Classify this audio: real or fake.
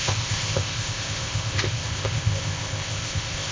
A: fake